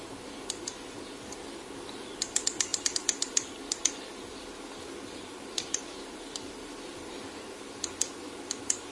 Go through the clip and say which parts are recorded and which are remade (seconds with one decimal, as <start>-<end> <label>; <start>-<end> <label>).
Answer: 0.0-8.9 remade